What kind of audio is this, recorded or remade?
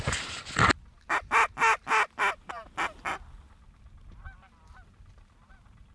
recorded